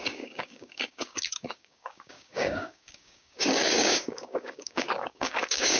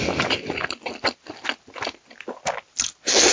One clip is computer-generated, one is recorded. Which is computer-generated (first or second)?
first